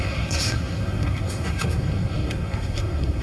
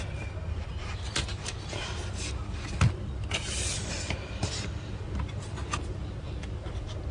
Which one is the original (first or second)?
second